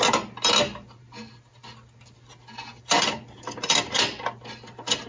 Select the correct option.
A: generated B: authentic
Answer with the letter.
B